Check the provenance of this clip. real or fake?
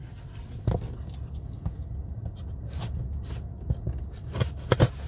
real